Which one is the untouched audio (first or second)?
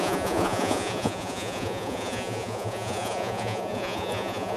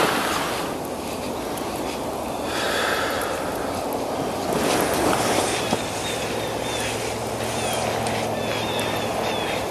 second